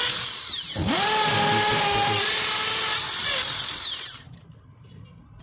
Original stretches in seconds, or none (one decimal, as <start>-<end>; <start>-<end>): 0.0-5.4